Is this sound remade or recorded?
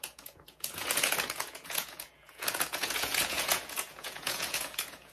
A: remade